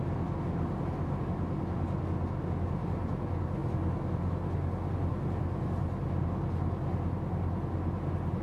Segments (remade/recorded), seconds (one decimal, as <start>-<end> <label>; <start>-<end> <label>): 0.0-8.4 recorded